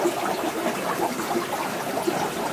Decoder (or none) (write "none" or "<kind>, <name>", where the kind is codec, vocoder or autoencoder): none